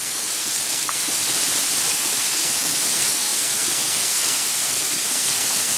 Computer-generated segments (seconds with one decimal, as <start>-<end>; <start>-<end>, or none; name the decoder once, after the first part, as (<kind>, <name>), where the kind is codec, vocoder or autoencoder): 0.0-1.2 (codec, SNAC); 1.9-5.8